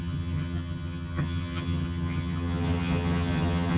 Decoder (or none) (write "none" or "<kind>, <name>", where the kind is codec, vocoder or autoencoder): vocoder, HiFi-GAN